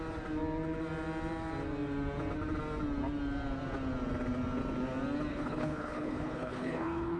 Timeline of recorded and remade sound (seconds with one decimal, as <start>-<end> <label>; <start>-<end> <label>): 0.0-5.3 recorded; 5.3-7.2 remade